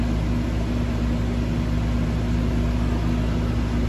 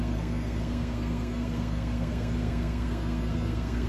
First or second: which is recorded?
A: first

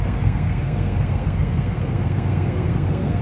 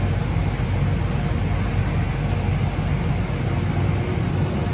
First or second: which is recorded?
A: second